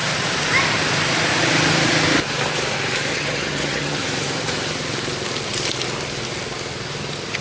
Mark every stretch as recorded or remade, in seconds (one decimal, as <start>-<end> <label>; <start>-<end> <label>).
0.0-3.1 recorded; 3.1-4.0 remade; 4.0-7.4 recorded

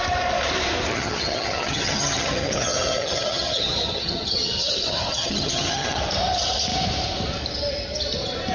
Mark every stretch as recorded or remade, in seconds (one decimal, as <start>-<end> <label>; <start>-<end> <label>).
0.0-0.9 recorded; 0.9-6.0 remade; 6.0-8.5 recorded